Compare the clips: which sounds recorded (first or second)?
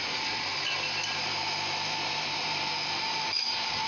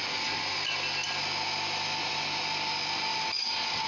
second